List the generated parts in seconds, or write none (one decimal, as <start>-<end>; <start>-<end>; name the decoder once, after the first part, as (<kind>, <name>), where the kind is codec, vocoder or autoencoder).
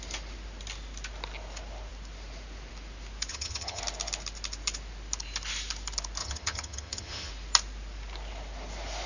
3.3-3.8 (vocoder, HiFi-GAN); 6.2-7.3